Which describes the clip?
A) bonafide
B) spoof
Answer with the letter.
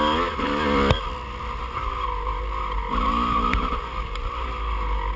A